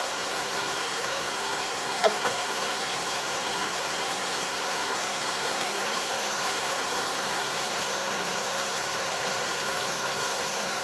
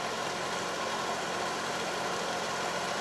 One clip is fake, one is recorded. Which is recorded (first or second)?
second